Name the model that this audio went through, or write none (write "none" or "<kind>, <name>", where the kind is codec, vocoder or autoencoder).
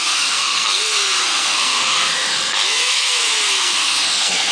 codec, SNAC